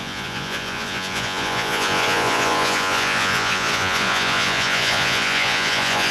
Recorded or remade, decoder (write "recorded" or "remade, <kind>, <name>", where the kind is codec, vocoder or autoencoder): remade, vocoder, Vocos